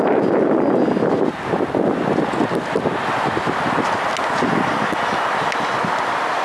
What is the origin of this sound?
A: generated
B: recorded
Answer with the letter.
B